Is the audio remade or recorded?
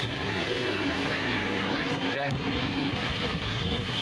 remade